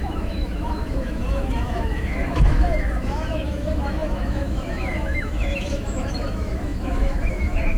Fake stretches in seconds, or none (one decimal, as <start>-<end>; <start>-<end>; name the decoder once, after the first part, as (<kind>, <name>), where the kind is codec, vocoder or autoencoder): 0.0-7.8 (autoencoder, DAC-VAE)